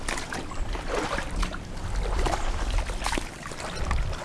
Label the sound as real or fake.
real